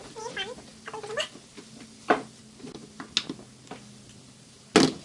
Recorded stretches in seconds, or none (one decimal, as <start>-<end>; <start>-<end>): 0.0-5.0